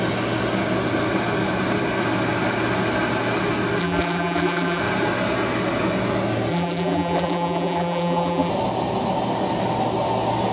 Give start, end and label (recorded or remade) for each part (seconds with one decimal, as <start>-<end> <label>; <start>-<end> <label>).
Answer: 0.0-3.8 recorded; 3.8-4.8 remade; 4.8-6.5 recorded; 6.5-8.5 remade; 8.5-10.5 recorded